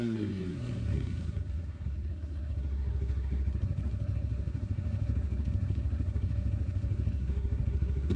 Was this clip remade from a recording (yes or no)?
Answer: yes